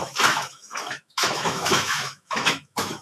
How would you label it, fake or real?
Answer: fake